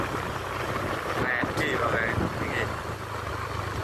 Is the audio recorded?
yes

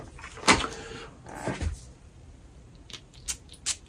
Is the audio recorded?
yes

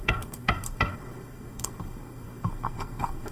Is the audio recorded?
no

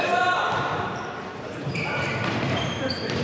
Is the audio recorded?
no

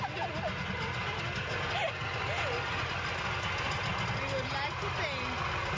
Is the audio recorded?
yes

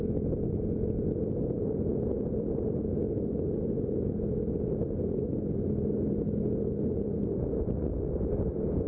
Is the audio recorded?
yes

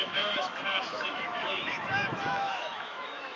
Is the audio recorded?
no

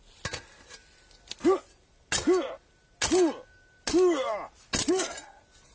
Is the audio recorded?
yes